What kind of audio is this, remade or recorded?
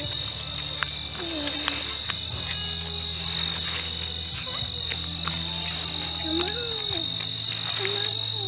recorded